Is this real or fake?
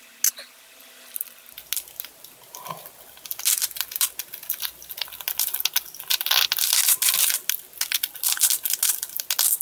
real